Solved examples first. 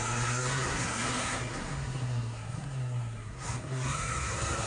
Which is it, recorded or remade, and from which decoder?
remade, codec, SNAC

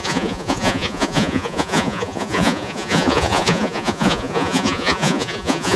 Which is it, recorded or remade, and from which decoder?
remade, vocoder, Vocos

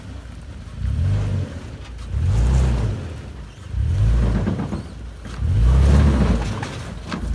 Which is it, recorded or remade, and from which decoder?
recorded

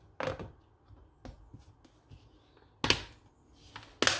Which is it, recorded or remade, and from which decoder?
recorded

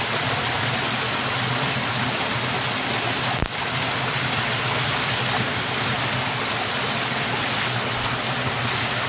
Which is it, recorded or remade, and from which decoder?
recorded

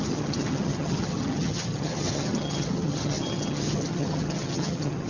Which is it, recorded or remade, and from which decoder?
remade, vocoder, HiFi-GAN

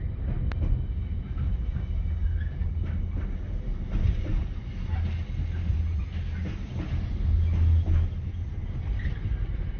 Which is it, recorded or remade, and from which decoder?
recorded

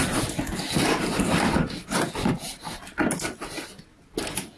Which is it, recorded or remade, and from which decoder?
recorded